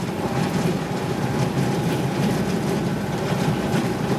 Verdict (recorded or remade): remade